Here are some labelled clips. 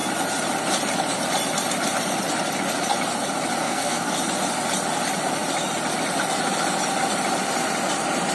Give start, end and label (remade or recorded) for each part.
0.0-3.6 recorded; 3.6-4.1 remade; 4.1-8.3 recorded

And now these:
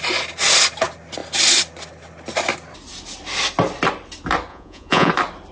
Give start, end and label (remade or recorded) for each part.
0.0-4.5 recorded; 4.5-5.1 remade; 5.1-5.5 recorded